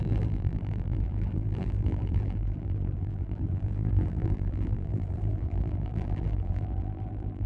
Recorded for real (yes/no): no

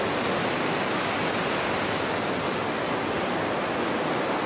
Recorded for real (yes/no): yes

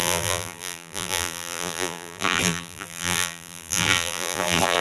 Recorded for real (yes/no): no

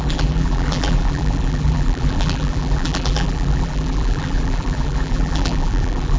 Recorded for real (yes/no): no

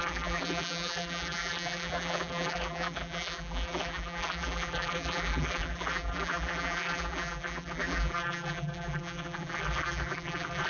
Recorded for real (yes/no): no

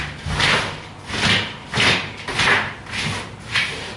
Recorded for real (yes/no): yes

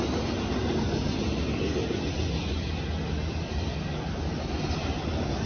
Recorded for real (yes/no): yes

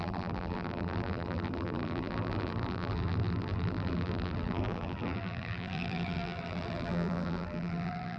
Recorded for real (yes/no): no